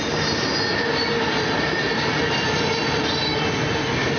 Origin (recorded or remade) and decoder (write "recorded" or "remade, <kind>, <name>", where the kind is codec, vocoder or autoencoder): recorded